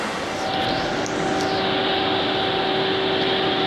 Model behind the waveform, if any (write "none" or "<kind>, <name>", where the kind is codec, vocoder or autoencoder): none